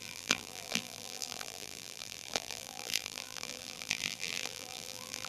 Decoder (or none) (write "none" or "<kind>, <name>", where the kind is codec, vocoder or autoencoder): vocoder, BigVGAN v2